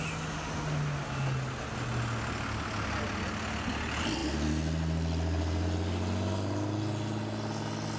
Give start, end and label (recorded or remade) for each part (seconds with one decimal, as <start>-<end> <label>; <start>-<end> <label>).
0.0-8.0 recorded